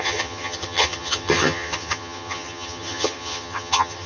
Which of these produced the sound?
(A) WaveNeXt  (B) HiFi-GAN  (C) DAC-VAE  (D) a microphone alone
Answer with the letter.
B